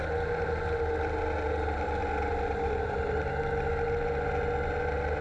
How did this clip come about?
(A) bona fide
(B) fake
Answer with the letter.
A